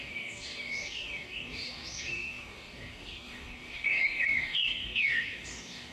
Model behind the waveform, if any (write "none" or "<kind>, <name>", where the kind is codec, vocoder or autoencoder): codec, DAC